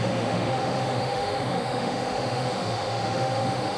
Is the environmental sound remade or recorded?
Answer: remade